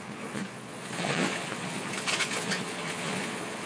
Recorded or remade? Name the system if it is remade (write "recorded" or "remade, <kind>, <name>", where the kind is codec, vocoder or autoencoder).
remade, vocoder, Vocos